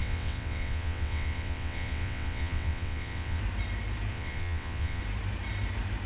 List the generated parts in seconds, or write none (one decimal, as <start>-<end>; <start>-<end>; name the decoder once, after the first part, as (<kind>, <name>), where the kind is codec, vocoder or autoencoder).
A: 0.0-3.4 (vocoder, WaveNeXt); 4.1-5.0